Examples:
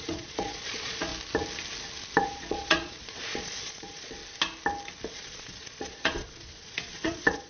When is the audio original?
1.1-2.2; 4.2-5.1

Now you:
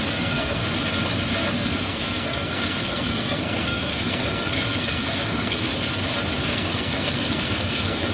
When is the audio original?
0.6-1.5; 5.7-6.4

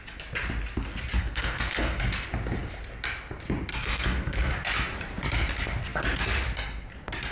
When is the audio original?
0.0-1.2; 2.0-3.7; 4.5-7.3

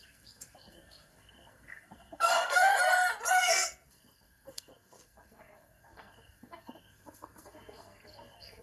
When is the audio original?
2.7-3.4

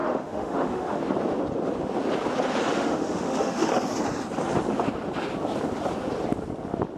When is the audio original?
1.0-2.7; 3.7-7.0

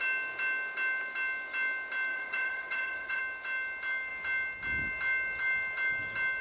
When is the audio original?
0.0-2.1; 3.2-6.4